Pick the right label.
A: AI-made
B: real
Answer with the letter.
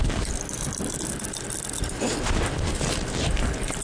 B